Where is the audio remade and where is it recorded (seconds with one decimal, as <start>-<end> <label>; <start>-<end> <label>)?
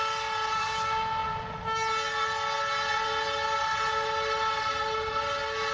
0.0-5.7 recorded